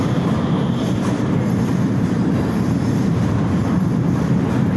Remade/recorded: remade